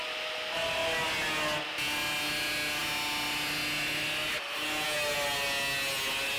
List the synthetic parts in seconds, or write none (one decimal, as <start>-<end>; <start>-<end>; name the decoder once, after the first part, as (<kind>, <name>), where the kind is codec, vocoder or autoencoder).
none